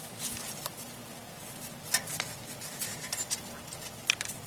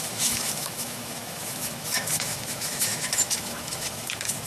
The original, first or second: first